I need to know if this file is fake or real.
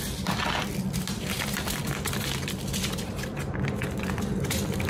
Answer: fake